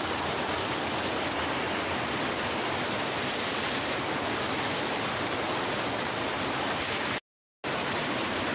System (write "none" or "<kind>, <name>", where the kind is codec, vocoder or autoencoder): none